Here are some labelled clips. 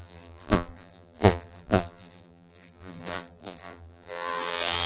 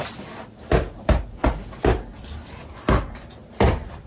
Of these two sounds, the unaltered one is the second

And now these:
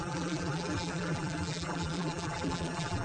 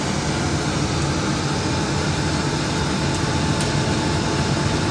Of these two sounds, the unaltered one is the second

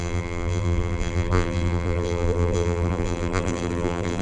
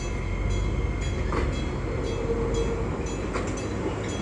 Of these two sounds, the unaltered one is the second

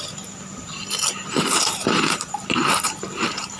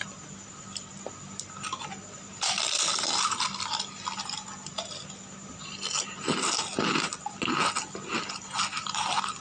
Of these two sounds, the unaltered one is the second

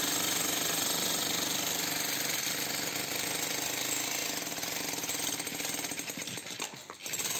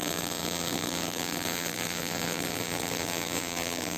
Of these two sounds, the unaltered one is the first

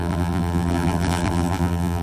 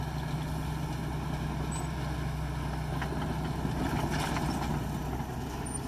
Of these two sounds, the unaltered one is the second